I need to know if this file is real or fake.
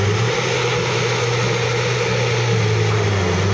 real